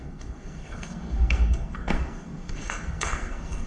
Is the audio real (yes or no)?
no